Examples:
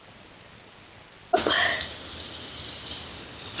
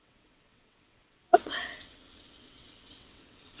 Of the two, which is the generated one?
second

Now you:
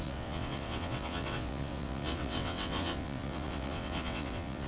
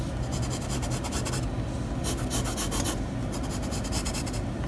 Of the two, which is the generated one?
first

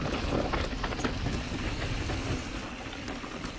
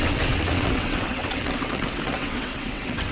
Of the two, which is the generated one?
second